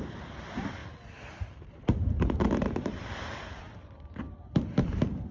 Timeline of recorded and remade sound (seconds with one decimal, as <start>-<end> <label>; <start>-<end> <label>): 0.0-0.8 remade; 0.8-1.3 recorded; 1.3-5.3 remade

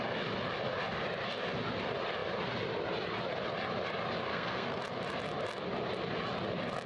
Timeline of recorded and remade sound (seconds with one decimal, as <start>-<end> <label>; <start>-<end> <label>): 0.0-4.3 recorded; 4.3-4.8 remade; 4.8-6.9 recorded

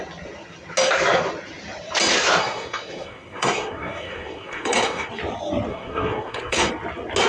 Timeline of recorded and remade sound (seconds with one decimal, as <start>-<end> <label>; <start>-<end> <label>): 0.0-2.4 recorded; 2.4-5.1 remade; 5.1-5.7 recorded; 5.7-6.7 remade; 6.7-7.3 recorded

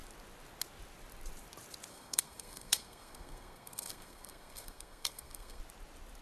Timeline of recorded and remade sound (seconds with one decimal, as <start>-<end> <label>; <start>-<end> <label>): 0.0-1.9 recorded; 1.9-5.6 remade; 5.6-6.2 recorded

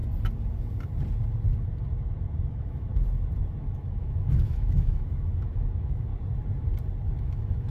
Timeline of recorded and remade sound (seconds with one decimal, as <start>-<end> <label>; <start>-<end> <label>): 0.0-2.5 recorded; 2.5-2.9 remade; 2.9-3.6 recorded; 3.6-6.1 remade; 6.1-7.2 recorded; 7.2-7.7 remade